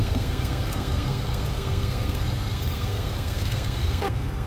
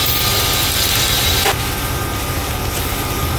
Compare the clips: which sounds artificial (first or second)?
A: first